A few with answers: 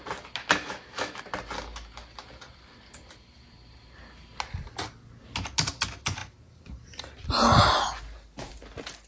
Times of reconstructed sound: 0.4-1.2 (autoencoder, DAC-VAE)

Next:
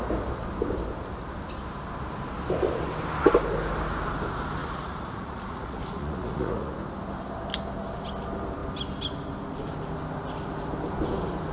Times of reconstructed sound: 4.6-6.7 (vocoder, Vocos)

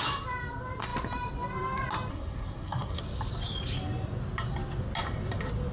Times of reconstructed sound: 2.1-3.0 (codec, SNAC)

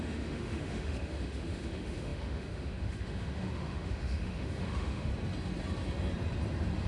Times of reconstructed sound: 0.0-5.1 (autoencoder, DAC-VAE)

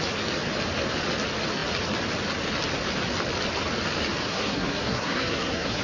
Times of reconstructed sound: 4.2-5.8 (codec, SNAC)

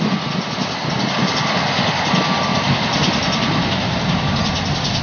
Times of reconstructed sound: 2.5-4.4 (vocoder, BigVGAN v2)

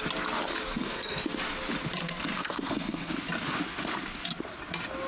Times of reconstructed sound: 0.7-1.2 (codec, SNAC); 2.0-3.1